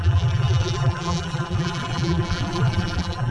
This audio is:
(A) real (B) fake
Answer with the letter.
B